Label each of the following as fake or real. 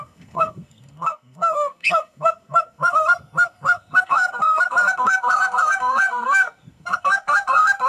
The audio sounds fake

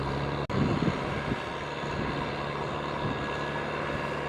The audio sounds real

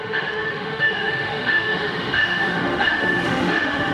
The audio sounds fake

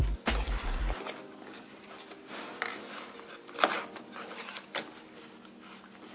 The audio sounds real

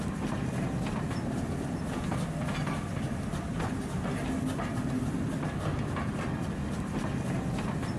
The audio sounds real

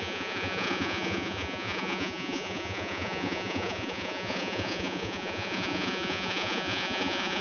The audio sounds fake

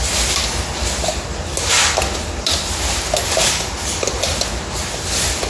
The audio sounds real